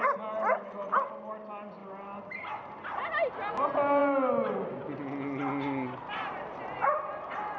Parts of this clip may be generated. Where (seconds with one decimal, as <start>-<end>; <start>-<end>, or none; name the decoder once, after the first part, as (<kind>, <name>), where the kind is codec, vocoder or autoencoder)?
none